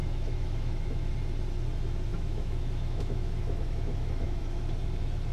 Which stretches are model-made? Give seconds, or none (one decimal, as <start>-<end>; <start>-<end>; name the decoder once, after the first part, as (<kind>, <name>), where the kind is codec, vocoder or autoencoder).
0.0-1.1 (autoencoder, DAC-VAE); 2.1-4.4